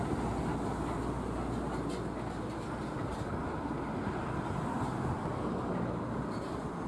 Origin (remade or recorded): recorded